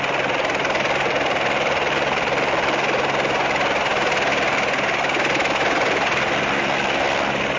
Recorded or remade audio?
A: recorded